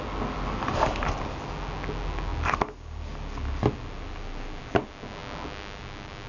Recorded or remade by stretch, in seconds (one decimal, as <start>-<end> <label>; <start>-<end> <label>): 0.0-6.3 recorded